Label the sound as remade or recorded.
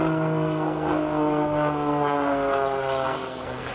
remade